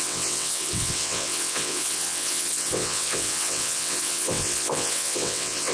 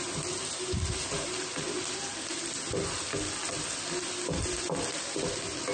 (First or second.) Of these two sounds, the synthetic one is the first